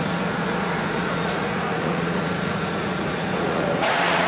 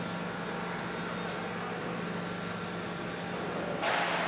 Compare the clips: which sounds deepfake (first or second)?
first